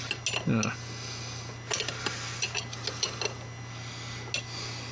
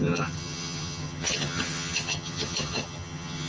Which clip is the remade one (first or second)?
second